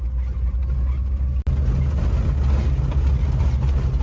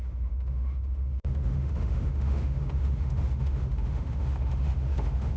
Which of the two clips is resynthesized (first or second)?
second